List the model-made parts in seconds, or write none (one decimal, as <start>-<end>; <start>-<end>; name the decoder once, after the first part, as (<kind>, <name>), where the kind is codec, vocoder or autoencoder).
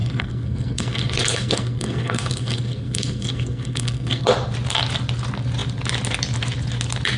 0.0-4.3 (codec, SNAC)